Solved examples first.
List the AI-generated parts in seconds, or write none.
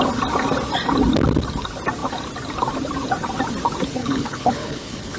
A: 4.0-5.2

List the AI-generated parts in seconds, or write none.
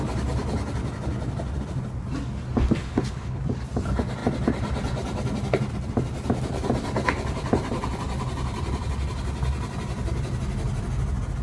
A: 2.8-3.4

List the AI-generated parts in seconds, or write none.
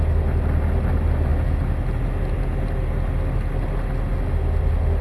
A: none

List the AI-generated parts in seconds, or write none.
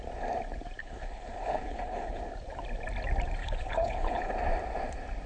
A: 0.8-2.2; 3.4-4.3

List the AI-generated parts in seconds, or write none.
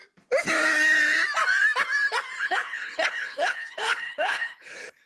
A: 2.4-5.1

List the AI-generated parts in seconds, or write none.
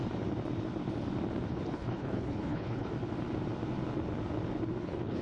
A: 1.5-2.9; 4.8-5.2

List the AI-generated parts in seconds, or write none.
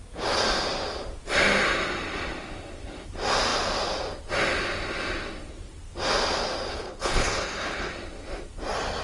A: 6.7-7.9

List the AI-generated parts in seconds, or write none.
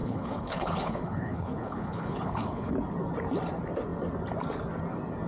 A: 0.0-2.7